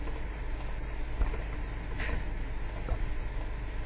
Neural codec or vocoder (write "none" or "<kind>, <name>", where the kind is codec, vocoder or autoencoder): none